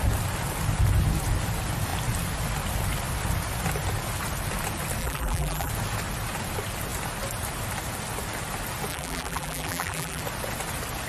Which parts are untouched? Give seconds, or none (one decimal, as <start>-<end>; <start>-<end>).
0.0-5.0; 5.7-8.9; 10.2-11.1